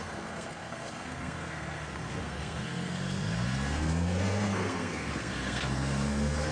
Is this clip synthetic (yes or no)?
yes